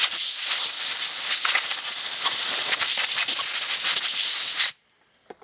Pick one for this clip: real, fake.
real